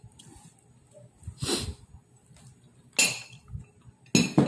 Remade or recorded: recorded